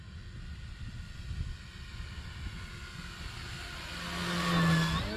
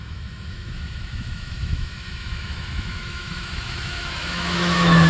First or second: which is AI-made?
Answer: second